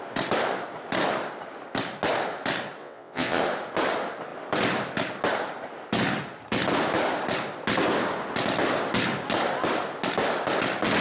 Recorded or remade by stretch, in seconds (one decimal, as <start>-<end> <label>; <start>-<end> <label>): 0.0-2.8 recorded; 2.8-3.4 remade; 3.4-11.0 recorded

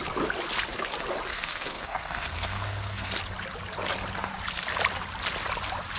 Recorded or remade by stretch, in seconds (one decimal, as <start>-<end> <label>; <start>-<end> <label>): 0.0-1.3 recorded; 1.3-3.1 remade; 3.1-6.0 recorded